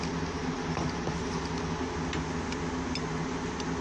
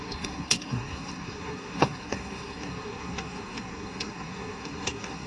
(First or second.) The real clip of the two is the first